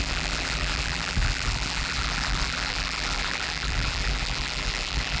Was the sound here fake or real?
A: fake